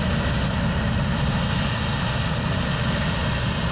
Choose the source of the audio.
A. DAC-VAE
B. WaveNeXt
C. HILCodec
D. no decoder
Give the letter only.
D